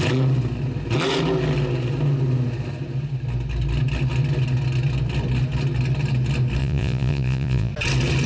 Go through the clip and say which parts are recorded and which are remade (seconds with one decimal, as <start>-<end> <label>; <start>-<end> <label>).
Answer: 0.0-6.6 recorded; 6.6-7.7 remade; 7.7-8.3 recorded